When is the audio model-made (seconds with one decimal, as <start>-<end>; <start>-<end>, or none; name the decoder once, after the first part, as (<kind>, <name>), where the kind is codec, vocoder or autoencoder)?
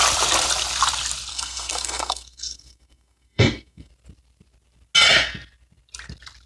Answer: 1.3-3.9 (codec, SNAC)